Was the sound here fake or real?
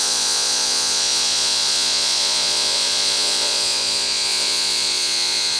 fake